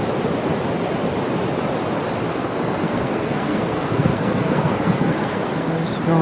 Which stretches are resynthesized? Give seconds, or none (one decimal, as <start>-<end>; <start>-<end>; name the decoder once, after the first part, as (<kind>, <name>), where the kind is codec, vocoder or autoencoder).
2.3-5.7 (codec, SNAC)